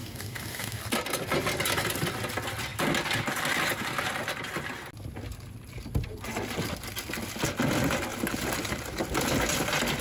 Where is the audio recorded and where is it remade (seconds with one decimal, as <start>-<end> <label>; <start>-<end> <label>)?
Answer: 0.0-0.8 remade; 0.8-10.0 recorded